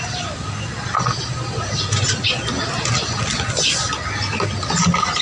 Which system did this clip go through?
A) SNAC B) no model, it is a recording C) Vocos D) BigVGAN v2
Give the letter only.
B